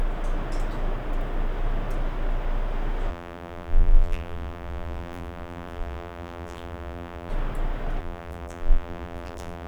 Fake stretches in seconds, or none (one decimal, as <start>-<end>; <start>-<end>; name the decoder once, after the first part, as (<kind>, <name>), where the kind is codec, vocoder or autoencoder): 3.1-7.3 (vocoder, BigVGAN v2); 8.0-9.7